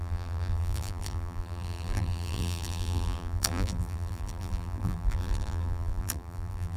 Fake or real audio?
fake